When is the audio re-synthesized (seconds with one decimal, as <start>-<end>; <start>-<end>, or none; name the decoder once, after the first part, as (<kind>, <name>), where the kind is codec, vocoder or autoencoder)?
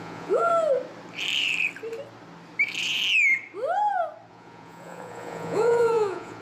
0.0-0.5 (vocoder, Vocos); 4.3-6.4